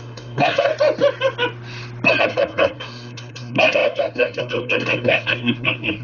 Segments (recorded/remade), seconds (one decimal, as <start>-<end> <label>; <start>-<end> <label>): 0.0-0.7 remade; 0.7-2.2 recorded; 2.2-6.0 remade